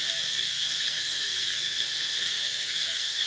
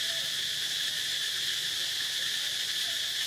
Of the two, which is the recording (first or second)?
second